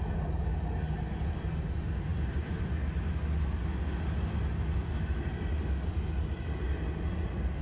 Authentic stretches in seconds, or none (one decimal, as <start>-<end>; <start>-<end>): 0.0-7.6